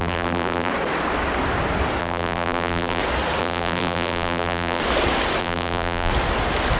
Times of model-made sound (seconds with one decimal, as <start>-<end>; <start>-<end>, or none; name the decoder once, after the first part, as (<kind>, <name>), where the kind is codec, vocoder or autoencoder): 0.0-0.7 (vocoder, BigVGAN v2); 2.0-3.0; 3.4-4.8; 5.4-6.1